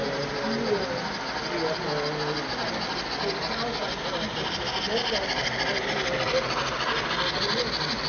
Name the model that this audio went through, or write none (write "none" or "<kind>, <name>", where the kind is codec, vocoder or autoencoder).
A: none